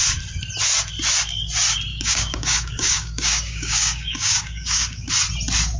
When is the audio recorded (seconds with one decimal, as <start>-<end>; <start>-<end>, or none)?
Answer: 0.0-1.9; 5.1-5.8